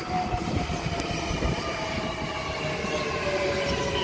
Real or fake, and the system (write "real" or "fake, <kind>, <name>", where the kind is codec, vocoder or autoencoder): real